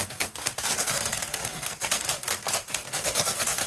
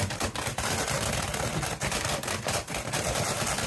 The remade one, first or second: first